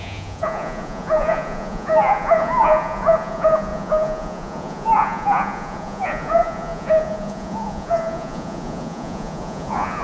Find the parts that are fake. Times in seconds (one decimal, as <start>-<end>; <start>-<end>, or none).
0.0-10.0